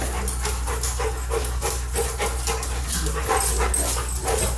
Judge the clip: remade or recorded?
recorded